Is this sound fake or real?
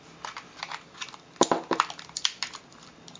real